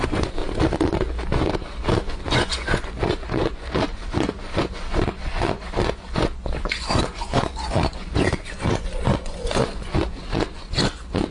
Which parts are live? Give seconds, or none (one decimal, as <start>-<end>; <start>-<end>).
0.4-2.1